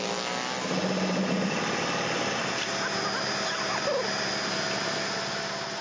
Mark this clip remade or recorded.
recorded